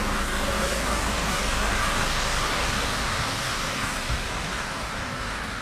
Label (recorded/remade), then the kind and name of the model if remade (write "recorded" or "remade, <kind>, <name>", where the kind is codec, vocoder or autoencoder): remade, codec, DAC